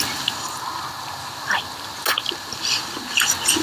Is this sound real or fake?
real